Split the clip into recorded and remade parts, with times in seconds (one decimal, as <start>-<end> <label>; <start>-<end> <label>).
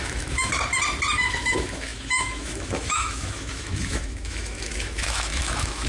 0.0-0.5 remade; 0.5-1.3 recorded; 1.3-5.9 remade